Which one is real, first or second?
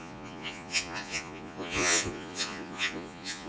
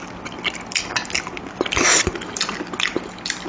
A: second